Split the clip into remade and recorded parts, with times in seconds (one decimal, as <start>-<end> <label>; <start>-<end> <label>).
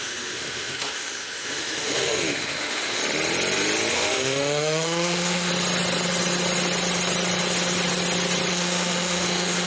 0.0-3.0 remade; 3.0-3.9 recorded; 3.9-5.5 remade; 5.5-8.5 recorded; 8.5-9.7 remade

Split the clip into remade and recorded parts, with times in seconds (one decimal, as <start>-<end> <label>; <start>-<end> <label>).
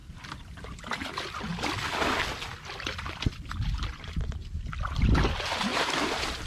0.0-0.6 remade; 0.6-5.7 recorded; 5.7-6.5 remade